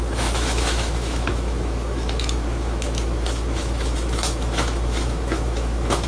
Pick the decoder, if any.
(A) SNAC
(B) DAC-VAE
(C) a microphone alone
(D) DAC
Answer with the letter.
B